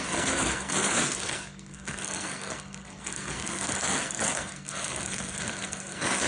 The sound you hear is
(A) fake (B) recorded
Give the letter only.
A